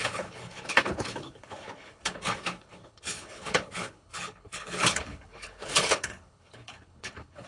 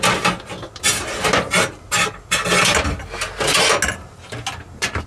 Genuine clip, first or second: second